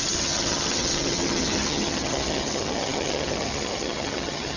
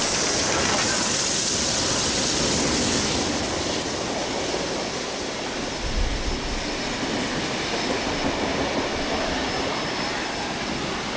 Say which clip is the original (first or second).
second